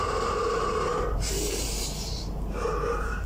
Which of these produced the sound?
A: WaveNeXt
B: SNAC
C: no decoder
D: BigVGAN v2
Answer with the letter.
D